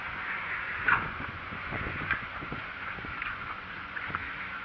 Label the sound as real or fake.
fake